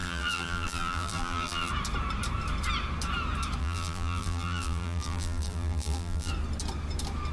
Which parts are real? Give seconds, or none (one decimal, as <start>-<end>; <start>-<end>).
1.7-3.6; 6.3-7.3